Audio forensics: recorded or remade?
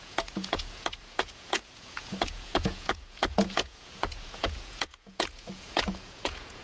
remade